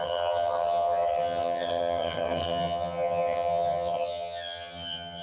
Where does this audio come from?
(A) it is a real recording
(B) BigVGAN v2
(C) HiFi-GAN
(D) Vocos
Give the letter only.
C